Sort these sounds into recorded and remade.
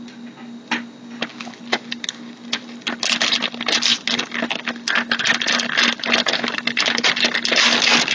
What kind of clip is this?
recorded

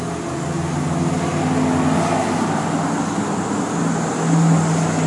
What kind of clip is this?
recorded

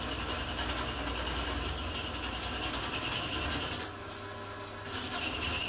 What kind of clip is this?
recorded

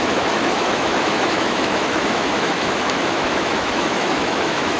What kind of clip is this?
remade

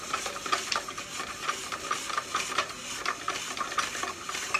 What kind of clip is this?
recorded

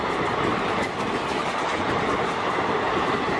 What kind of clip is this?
recorded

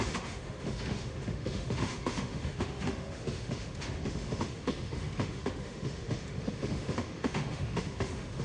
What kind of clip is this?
remade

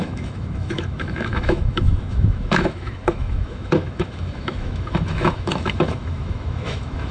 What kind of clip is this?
remade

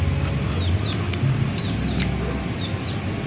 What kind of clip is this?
recorded